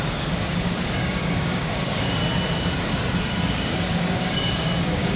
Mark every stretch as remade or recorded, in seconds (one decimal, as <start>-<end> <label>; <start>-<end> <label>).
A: 0.0-2.2 remade; 2.2-3.2 recorded; 3.2-5.2 remade